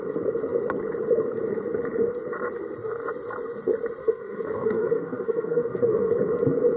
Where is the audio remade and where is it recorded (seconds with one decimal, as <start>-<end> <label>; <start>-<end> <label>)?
0.0-4.0 recorded; 4.0-6.1 remade; 6.1-6.8 recorded